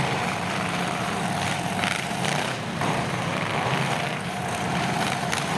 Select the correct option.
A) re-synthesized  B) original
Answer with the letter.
A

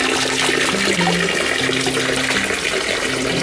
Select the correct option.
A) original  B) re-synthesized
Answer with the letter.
A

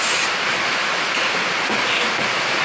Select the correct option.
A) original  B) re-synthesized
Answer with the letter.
A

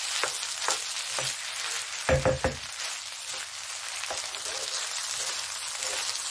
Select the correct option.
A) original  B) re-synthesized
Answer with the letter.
A